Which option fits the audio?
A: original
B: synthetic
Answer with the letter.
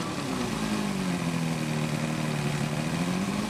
A